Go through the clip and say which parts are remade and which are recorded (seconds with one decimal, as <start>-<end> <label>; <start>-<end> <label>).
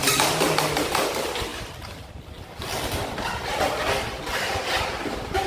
0.0-1.0 remade; 1.0-5.5 recorded